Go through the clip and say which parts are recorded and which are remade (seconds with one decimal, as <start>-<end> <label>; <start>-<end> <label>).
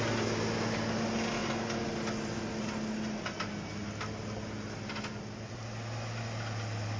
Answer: 0.0-7.0 recorded